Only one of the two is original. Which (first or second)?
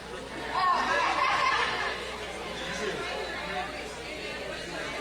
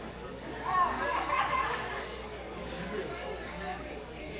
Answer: first